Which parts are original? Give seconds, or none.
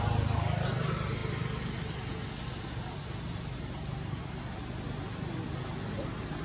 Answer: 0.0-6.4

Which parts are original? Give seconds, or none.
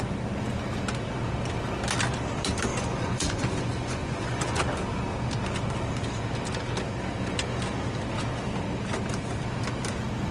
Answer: 0.0-2.7; 4.6-10.3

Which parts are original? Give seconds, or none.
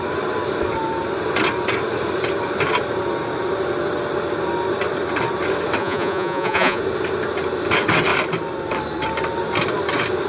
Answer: 0.0-5.8; 6.8-10.3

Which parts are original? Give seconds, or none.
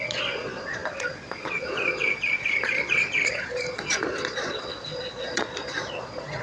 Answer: none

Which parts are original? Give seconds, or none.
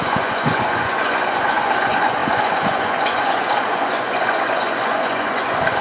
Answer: none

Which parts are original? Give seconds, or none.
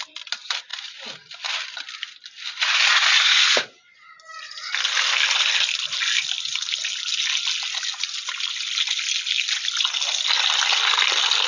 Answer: 0.0-11.5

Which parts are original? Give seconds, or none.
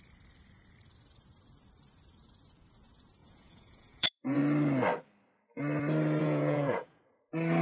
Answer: 0.0-3.2; 4.4-6.2; 7.0-7.6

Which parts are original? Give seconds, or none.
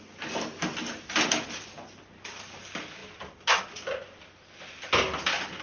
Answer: 0.0-5.6